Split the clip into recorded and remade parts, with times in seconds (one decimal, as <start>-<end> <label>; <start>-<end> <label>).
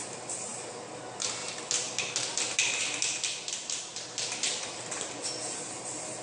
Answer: 0.0-6.2 recorded